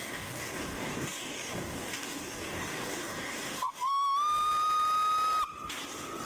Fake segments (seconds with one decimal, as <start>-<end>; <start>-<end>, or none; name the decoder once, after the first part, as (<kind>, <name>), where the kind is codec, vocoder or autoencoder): 0.0-3.9 (codec, DAC)